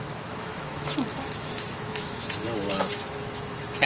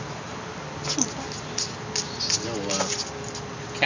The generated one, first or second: first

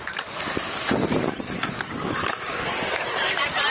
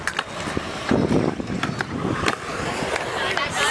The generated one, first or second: first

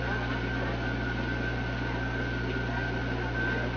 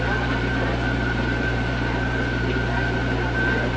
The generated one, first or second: second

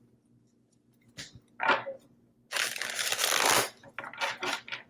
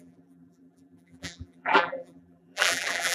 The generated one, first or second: second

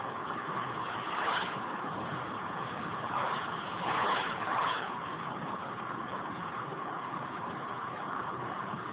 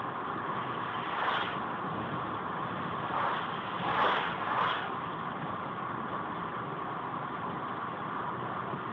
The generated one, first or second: first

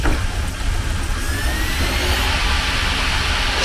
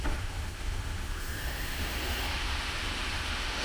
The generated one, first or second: second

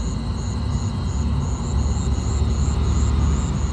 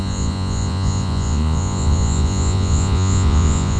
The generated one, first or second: second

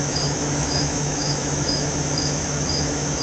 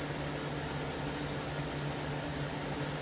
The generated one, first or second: first